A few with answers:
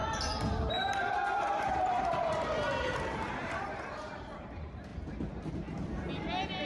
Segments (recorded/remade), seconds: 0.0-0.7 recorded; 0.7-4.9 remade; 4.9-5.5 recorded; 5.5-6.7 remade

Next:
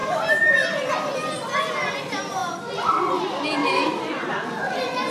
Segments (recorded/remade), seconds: 0.0-2.4 recorded; 2.4-3.2 remade; 3.2-3.6 recorded; 3.6-4.6 remade; 4.6-5.1 recorded

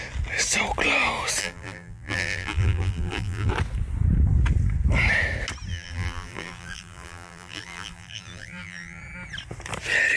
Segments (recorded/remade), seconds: 0.0-1.4 recorded; 1.4-3.5 remade; 3.5-5.7 recorded; 5.7-9.0 remade; 9.0-10.2 recorded

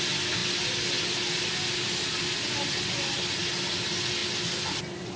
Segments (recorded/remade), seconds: 0.0-5.2 recorded

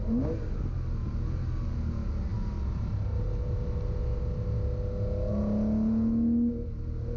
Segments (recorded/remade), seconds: 0.0-7.2 recorded

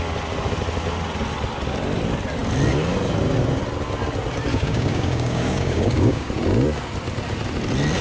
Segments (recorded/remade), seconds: 0.0-4.5 recorded; 4.5-6.3 remade; 6.3-8.0 recorded

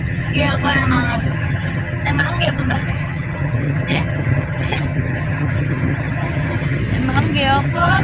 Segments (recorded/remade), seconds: 0.0-6.8 remade; 6.8-7.6 recorded; 7.6-8.0 remade

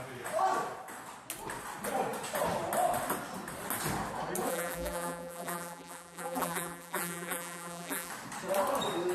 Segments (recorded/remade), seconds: 0.0-4.5 recorded; 4.5-8.1 remade; 8.1-9.1 recorded